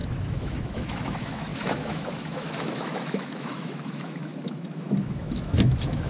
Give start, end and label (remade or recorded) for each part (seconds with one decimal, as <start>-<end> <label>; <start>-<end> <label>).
0.0-6.1 remade